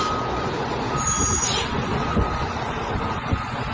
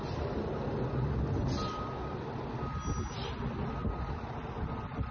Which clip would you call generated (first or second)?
first